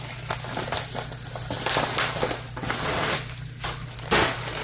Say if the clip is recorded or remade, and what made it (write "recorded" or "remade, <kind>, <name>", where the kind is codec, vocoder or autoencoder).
recorded